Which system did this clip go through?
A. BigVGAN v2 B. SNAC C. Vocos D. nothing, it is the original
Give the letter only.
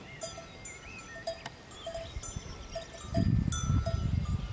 D